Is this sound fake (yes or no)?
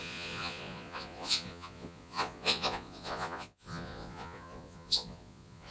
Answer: yes